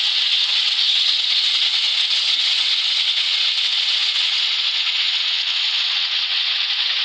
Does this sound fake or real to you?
fake